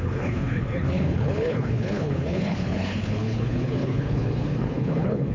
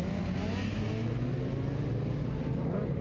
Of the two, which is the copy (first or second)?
first